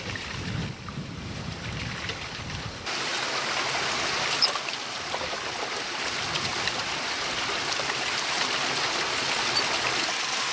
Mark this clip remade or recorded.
recorded